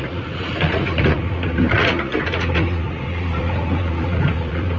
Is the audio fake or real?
fake